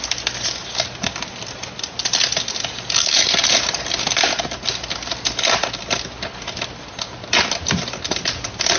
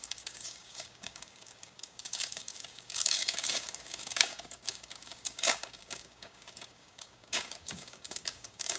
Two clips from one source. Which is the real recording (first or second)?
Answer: first